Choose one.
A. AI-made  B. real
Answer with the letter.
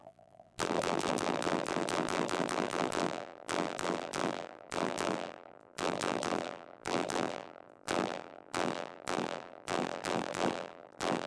A